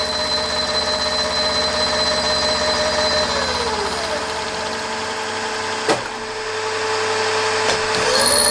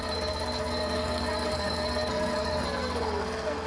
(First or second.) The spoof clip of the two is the second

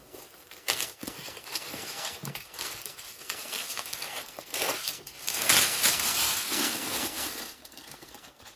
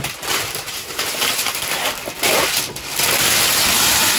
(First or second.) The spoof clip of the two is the first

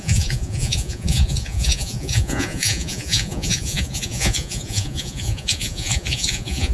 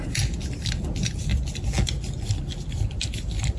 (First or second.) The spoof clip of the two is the first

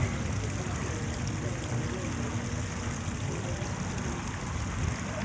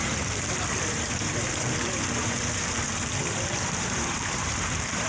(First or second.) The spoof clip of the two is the second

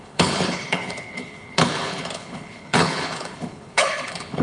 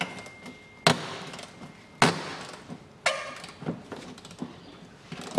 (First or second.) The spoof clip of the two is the first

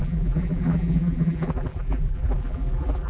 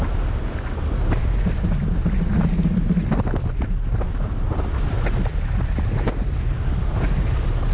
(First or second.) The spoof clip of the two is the first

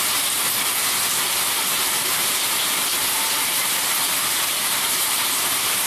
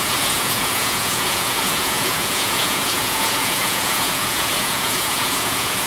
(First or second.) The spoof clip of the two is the second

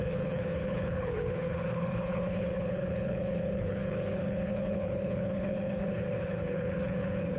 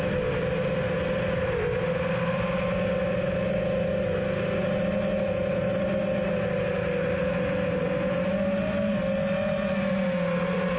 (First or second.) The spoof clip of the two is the first